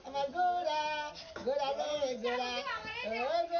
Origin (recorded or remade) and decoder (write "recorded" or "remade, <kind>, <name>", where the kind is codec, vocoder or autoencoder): recorded